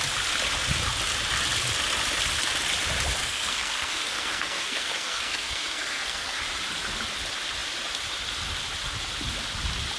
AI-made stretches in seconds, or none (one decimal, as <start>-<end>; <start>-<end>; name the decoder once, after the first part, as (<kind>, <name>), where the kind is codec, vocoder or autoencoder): 3.2-6.4 (codec, SNAC)